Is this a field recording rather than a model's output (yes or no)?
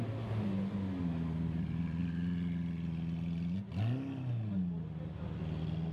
yes